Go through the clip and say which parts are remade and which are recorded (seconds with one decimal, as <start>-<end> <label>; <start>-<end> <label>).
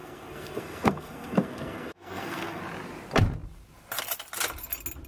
0.0-2.6 remade; 2.6-5.1 recorded